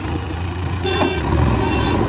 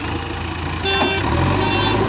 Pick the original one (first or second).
second